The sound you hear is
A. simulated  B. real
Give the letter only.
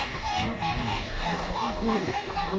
A